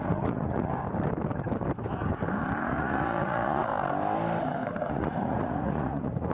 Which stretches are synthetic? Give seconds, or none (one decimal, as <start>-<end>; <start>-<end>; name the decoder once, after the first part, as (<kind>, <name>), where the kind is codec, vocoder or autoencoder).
0.0-0.7 (vocoder, Vocos); 2.6-3.7; 4.9-6.3